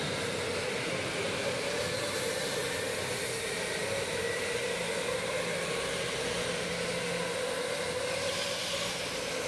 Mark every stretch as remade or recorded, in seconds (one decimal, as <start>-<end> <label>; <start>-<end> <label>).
0.0-9.5 recorded